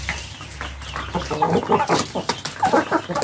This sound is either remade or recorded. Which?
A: recorded